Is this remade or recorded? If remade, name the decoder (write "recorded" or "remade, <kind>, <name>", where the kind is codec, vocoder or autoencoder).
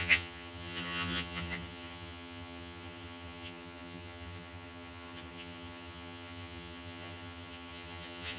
remade, vocoder, HiFi-GAN